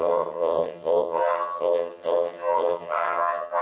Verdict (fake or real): fake